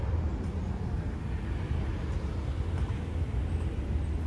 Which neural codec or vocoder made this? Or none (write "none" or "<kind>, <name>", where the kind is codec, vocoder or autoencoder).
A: none